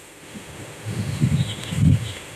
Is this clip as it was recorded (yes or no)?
no